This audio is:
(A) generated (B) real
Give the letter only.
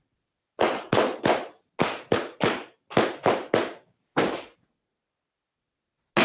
B